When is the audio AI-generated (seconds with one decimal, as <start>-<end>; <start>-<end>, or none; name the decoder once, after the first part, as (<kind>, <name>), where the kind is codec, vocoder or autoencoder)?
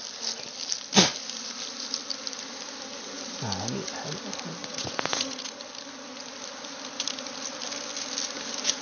4.6-5.6 (vocoder, Vocos)